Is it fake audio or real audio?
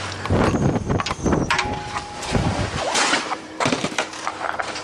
fake